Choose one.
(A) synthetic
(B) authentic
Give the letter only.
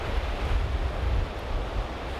B